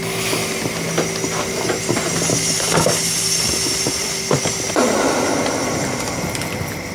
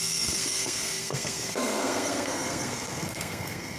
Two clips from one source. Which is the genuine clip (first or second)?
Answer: first